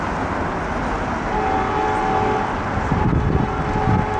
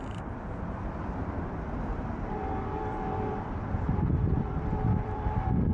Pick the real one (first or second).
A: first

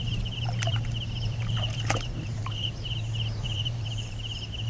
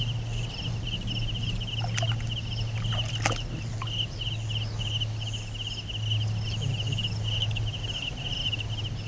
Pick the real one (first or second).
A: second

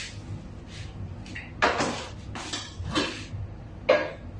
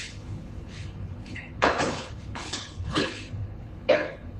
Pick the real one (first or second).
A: first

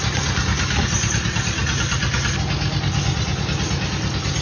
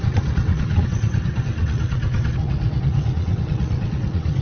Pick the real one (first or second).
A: first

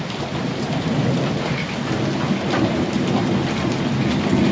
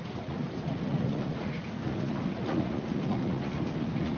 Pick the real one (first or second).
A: first